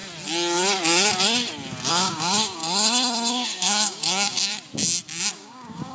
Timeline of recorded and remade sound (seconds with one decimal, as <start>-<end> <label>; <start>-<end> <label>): 0.0-1.9 recorded; 1.9-2.6 remade; 2.6-3.3 recorded; 3.3-4.5 remade; 4.5-5.3 recorded; 5.3-5.9 remade